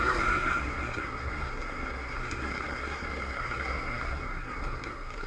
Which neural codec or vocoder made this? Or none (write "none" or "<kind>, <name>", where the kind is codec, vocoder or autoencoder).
codec, SNAC